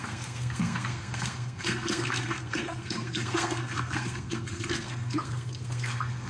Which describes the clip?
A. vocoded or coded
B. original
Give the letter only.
A